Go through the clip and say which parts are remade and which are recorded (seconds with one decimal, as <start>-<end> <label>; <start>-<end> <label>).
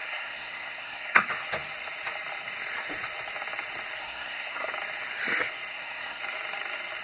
0.0-1.3 remade; 1.3-4.0 recorded; 4.0-4.7 remade; 4.7-5.7 recorded; 5.7-6.2 remade; 6.2-7.0 recorded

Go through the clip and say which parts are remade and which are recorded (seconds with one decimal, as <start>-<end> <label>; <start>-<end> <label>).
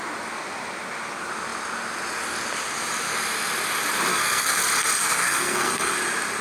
0.0-4.1 recorded; 4.1-4.6 remade; 4.6-5.0 recorded; 5.0-5.9 remade; 5.9-6.4 recorded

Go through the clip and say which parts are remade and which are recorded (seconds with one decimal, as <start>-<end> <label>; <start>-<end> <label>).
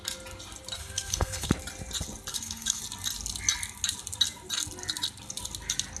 0.0-0.8 recorded; 0.8-1.5 remade; 1.5-2.3 recorded; 2.3-2.8 remade; 2.8-6.0 recorded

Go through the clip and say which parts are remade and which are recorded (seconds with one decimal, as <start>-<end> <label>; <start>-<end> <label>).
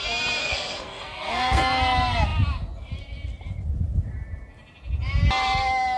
0.0-0.4 recorded; 0.4-1.6 remade; 1.6-6.0 recorded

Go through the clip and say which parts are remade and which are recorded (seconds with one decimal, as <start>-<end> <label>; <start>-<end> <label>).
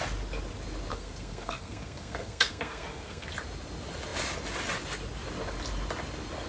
0.0-0.9 recorded; 0.9-3.3 remade; 3.3-6.5 recorded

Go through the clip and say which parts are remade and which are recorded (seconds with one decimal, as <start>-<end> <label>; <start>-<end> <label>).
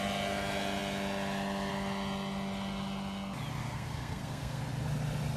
0.0-3.6 recorded; 3.6-4.6 remade; 4.6-5.4 recorded